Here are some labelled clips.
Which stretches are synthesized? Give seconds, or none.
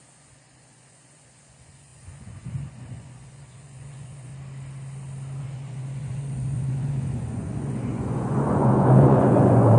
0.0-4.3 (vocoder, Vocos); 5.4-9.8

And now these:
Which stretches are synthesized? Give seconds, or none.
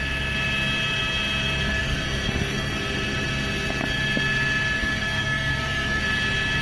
1.8-2.8 (codec, SNAC); 4.8-6.0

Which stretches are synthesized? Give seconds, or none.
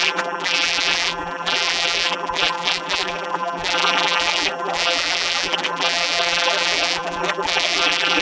0.0-8.2 (vocoder, BigVGAN v2)